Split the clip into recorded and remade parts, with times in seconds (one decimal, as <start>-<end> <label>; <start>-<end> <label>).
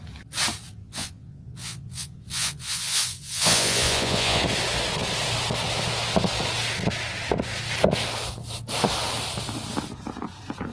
0.0-0.8 recorded; 0.8-4.4 remade; 4.4-10.7 recorded